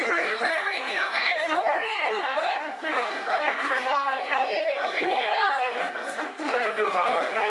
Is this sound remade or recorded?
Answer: remade